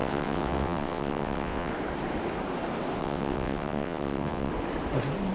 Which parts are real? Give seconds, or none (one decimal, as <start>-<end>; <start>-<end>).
1.7-3.0; 4.5-5.3